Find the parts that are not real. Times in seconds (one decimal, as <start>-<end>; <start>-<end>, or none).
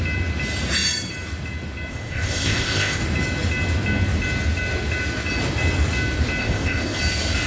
1.9-3.0; 6.4-7.0